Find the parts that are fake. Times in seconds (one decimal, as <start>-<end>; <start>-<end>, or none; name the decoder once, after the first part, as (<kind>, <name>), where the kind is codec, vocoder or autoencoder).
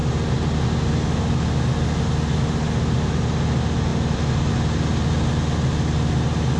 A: 3.9-4.5 (vocoder, BigVGAN v2)